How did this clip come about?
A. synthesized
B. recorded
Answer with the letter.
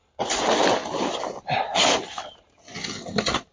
B